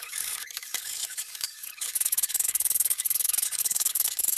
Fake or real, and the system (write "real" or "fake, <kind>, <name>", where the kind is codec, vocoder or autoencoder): fake, codec, DAC